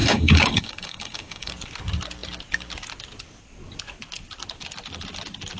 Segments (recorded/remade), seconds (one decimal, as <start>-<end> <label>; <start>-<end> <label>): 0.0-1.5 remade; 1.5-5.6 recorded